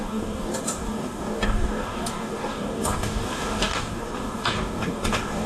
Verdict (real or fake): fake